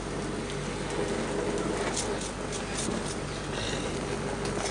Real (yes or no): yes